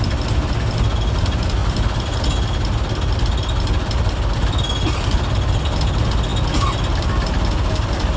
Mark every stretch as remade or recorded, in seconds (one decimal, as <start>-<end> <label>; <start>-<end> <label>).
0.0-8.2 recorded